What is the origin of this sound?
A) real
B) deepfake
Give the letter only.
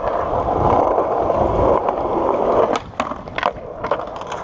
A